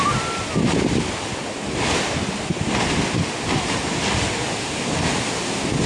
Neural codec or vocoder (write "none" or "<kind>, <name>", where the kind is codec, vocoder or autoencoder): none